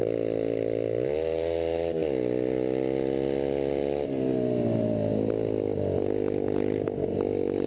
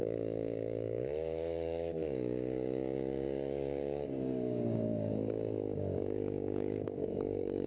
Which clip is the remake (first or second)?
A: second